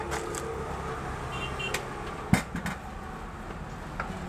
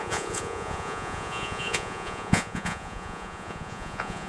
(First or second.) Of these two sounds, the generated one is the second